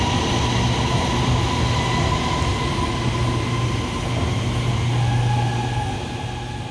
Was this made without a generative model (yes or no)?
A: yes